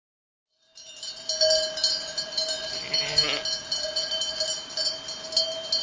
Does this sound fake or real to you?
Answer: real